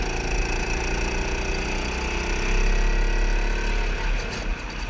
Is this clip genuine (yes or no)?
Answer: yes